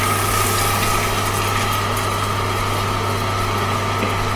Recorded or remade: recorded